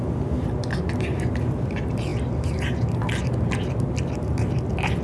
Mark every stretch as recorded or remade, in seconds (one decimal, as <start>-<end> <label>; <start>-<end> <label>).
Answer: 0.0-5.0 recorded